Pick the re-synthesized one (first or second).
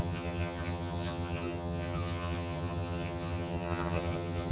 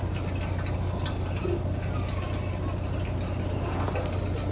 first